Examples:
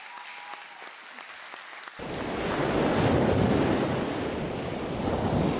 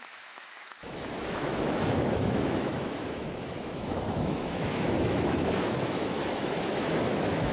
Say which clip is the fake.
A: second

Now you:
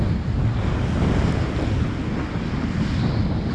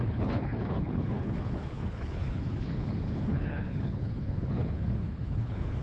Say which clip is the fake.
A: second